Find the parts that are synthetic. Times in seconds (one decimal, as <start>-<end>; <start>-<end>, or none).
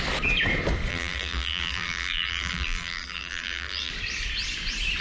0.9-3.9